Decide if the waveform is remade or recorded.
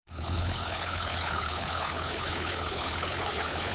remade